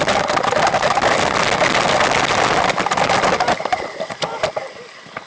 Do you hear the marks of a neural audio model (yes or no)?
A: no